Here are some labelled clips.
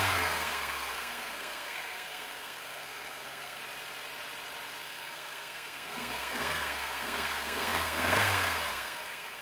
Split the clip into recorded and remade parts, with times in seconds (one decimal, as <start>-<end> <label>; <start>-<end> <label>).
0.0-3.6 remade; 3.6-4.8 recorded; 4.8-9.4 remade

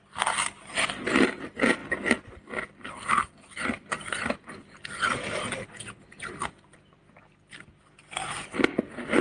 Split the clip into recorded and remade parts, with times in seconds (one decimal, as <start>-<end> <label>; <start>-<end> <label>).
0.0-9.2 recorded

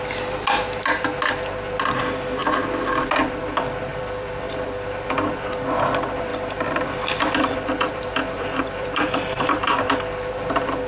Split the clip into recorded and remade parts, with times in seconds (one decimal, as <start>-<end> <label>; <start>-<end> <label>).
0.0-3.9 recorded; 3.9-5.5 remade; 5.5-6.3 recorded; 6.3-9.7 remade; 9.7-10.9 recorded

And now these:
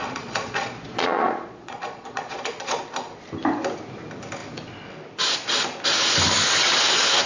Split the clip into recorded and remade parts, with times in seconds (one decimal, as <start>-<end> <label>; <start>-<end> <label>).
0.0-2.8 remade; 2.8-7.3 recorded

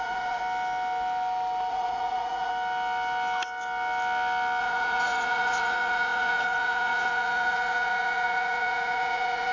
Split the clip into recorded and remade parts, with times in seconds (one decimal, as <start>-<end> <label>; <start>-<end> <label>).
0.0-0.4 remade; 0.4-1.7 recorded; 1.7-2.5 remade; 2.5-4.6 recorded; 4.6-9.5 remade

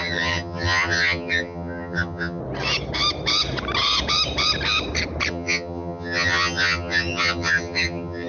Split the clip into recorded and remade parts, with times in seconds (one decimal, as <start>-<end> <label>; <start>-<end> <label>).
0.0-2.4 remade; 2.4-5.3 recorded; 5.3-8.3 remade

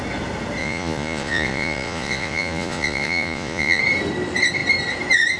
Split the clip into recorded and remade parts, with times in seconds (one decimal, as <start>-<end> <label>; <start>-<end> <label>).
0.0-0.6 recorded; 0.6-3.8 remade; 3.8-5.4 recorded